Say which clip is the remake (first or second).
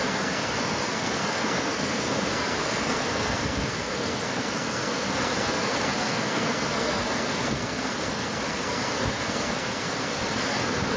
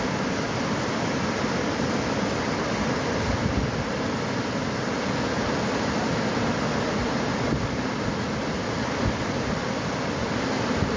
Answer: first